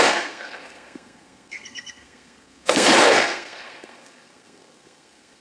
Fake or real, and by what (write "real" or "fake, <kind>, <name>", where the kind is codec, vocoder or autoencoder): fake, codec, SNAC